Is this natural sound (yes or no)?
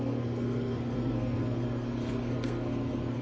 no